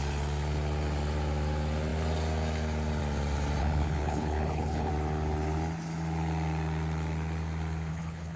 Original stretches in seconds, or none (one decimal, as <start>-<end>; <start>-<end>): 0.0-3.6; 4.9-7.9